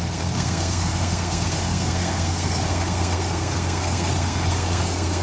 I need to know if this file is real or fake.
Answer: fake